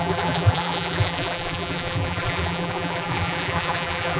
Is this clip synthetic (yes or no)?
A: yes